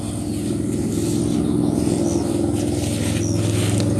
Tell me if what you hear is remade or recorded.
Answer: recorded